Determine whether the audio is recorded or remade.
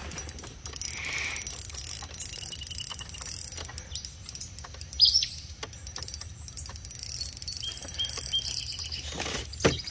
recorded